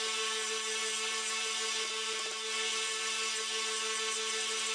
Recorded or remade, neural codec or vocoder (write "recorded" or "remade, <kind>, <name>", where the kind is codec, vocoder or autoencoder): recorded